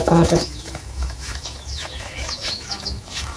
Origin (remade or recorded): remade